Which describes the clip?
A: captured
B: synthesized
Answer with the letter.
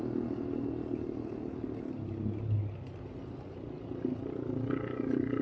A